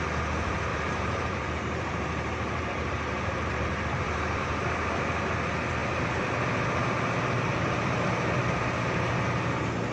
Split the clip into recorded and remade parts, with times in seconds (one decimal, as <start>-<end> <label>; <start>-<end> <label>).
0.0-0.7 recorded; 0.7-4.4 remade; 4.4-9.9 recorded